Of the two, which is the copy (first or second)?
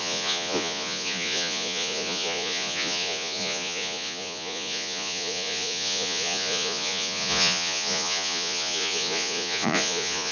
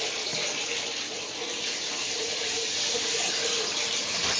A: first